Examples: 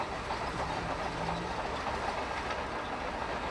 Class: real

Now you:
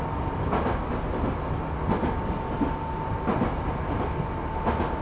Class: real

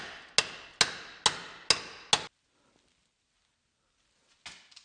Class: real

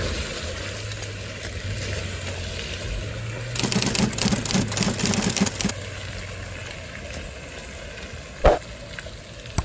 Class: real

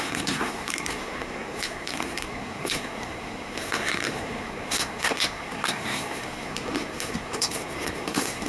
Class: fake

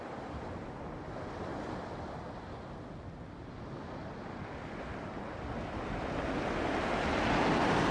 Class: real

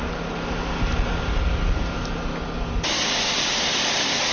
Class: real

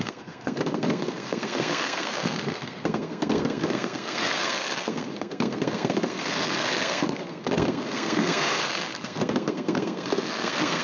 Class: fake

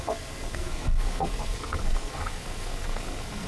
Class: fake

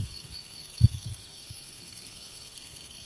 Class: fake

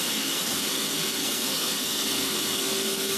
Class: fake